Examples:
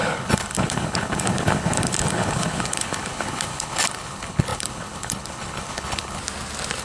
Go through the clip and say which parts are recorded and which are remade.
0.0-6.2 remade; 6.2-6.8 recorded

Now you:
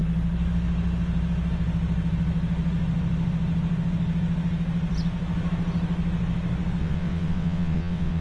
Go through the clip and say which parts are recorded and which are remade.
0.0-6.8 recorded; 6.8-8.2 remade

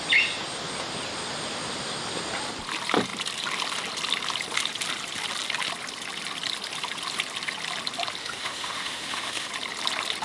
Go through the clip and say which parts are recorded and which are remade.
0.0-8.2 recorded; 8.2-9.5 remade; 9.5-10.2 recorded

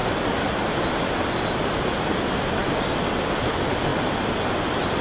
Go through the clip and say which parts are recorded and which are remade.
0.0-5.0 recorded

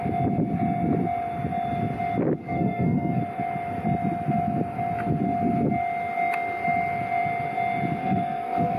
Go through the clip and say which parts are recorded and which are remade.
0.0-2.4 recorded; 2.4-3.2 remade; 3.2-8.0 recorded; 8.0-8.8 remade